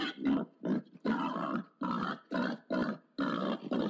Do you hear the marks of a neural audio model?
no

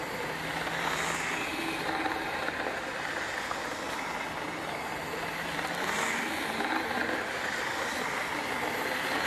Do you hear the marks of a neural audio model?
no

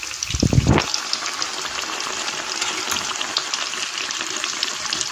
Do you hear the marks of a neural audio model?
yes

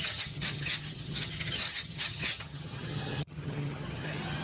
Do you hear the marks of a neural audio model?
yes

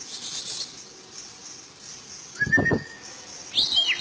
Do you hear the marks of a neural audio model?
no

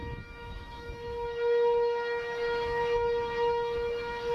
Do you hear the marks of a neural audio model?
yes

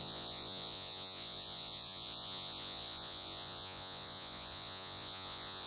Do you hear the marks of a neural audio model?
yes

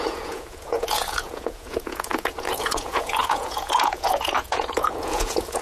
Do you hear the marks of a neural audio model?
yes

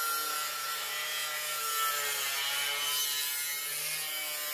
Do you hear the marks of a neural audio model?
no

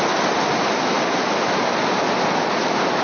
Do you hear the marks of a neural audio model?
no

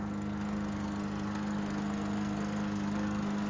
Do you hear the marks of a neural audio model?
yes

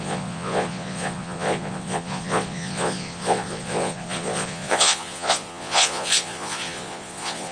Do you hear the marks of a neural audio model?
yes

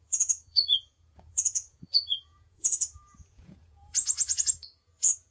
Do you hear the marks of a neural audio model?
yes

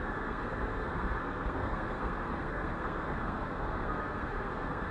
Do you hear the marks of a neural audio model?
yes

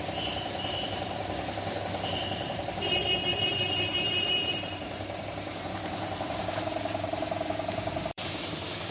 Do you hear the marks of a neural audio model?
yes